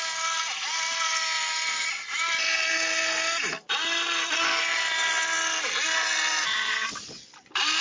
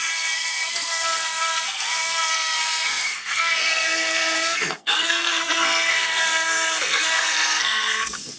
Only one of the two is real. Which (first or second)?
first